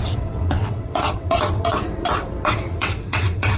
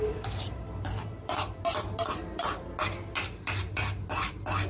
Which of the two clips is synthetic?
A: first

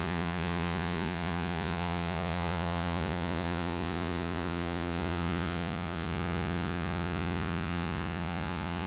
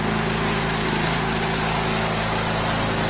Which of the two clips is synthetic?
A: first